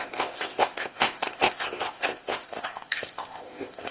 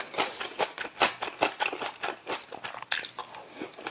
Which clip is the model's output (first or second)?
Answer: first